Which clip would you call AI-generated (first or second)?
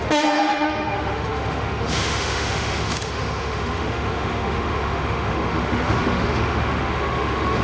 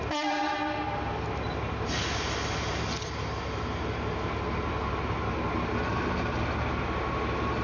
first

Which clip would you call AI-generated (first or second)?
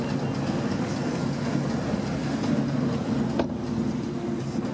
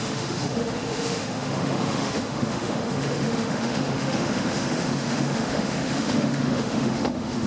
second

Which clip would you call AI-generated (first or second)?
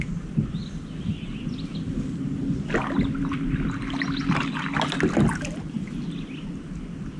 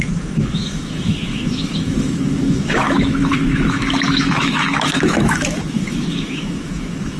second